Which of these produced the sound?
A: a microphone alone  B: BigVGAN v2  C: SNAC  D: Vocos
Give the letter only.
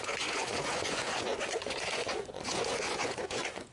D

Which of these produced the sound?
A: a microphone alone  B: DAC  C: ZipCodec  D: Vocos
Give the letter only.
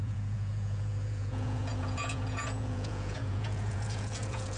D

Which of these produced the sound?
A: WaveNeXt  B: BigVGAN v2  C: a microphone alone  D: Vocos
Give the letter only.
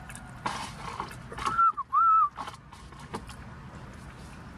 C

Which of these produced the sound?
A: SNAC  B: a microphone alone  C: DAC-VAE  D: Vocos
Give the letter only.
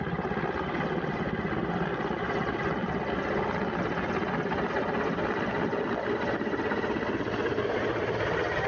B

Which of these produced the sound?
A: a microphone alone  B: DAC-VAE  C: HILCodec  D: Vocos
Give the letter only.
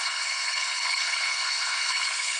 C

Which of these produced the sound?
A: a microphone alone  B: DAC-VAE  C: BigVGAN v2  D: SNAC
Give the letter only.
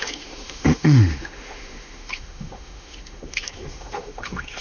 B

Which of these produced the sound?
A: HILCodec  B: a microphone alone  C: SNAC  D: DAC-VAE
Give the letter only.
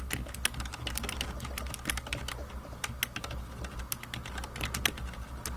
B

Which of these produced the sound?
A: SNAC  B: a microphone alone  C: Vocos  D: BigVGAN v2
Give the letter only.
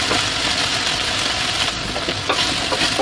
B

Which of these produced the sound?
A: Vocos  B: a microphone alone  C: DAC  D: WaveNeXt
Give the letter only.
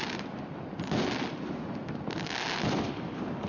B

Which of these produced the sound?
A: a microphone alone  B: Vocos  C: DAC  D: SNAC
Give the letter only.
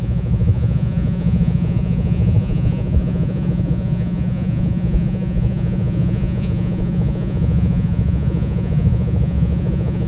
B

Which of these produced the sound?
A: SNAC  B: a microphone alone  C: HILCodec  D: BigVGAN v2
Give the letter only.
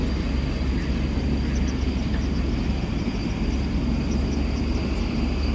B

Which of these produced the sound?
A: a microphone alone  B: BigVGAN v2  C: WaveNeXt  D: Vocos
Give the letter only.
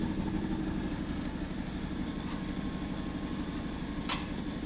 A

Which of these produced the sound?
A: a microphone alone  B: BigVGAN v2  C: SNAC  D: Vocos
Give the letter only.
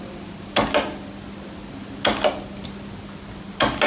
A